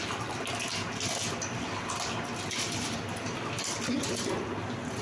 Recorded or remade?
recorded